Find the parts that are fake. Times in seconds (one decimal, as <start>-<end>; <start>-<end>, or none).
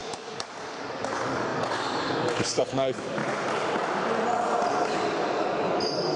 0.0-3.2; 4.8-6.2